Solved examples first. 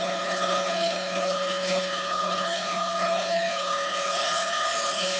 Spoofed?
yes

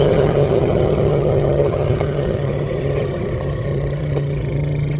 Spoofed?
yes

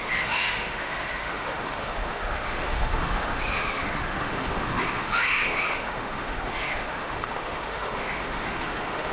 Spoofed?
yes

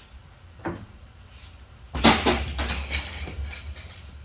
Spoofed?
no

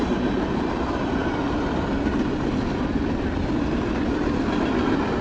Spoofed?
no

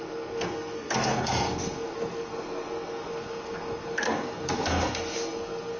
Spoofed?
yes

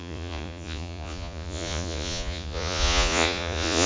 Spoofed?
yes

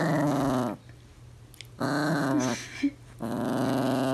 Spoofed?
no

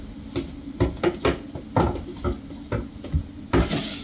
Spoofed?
no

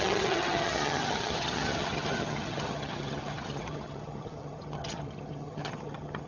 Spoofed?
yes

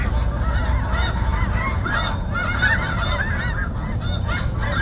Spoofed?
no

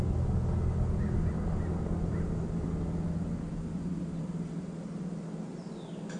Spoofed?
no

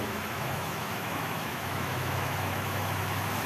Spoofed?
yes